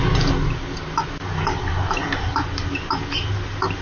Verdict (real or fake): real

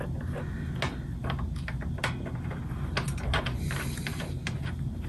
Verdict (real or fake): real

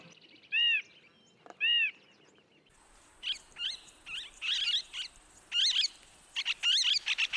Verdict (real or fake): real